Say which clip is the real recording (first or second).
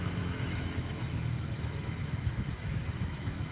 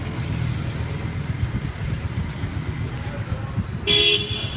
second